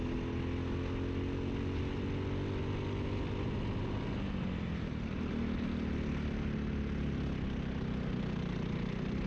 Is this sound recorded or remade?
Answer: recorded